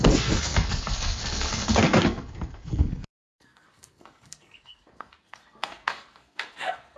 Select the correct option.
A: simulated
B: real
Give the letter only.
A